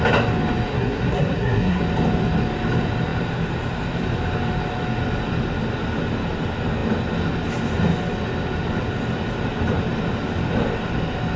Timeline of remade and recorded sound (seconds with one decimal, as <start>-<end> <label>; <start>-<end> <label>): 0.0-0.7 recorded; 0.7-1.8 remade; 1.8-11.4 recorded